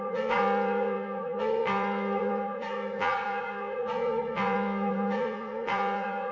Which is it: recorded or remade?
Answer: remade